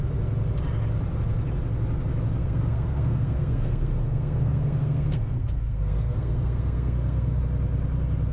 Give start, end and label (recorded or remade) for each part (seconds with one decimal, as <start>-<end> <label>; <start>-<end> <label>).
0.0-2.4 recorded; 2.4-7.4 remade; 7.4-8.3 recorded